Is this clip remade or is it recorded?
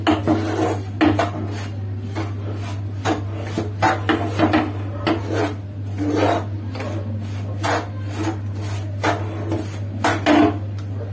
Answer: recorded